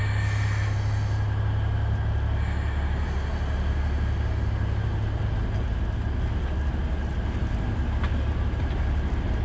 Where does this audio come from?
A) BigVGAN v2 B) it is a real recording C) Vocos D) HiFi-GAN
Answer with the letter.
B